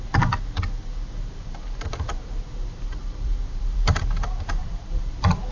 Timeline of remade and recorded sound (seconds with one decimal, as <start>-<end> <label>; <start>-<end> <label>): 0.0-1.4 recorded; 1.4-2.3 remade; 2.3-3.0 recorded; 3.0-4.0 remade; 4.0-4.6 recorded; 4.6-5.1 remade; 5.1-5.5 recorded

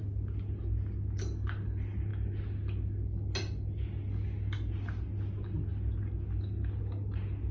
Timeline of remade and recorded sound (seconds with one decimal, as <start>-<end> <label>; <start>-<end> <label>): 0.0-7.5 recorded

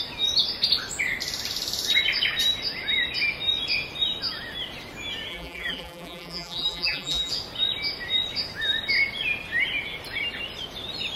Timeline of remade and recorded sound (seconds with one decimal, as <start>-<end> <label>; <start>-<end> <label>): 0.0-5.3 recorded; 5.3-7.3 remade; 7.3-11.2 recorded

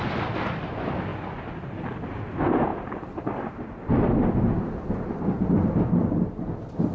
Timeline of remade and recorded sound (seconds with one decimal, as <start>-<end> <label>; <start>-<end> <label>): 0.0-2.7 recorded; 2.7-4.3 remade; 4.3-6.9 recorded

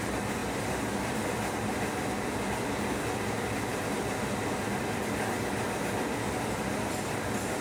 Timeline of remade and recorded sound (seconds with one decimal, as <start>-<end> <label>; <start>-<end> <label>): 0.0-3.7 recorded; 3.7-4.3 remade; 4.3-7.6 recorded

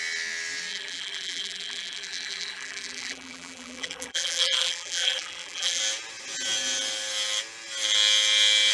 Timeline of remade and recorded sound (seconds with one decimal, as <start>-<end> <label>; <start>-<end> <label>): 0.0-0.7 recorded; 0.7-5.8 remade; 5.8-8.7 recorded

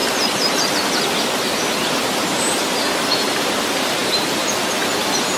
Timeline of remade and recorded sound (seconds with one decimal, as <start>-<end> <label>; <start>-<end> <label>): 0.0-2.3 recorded; 2.3-2.9 remade; 2.9-5.4 recorded